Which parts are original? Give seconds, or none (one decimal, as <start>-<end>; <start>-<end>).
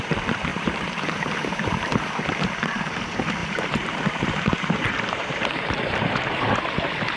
0.0-0.5; 2.1-3.4; 6.6-7.2